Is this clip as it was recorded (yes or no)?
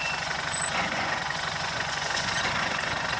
no